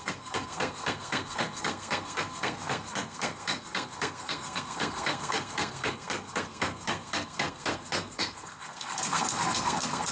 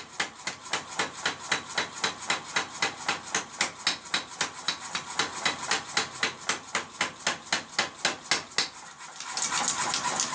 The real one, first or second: second